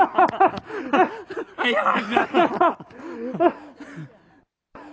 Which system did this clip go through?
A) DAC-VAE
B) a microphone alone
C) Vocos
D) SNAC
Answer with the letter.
B